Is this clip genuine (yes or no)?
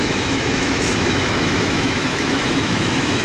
no